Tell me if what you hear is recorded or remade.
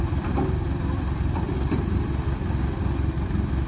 recorded